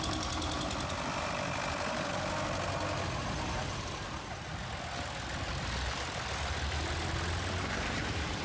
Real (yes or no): yes